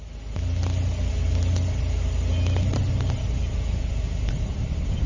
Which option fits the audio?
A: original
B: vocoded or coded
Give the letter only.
A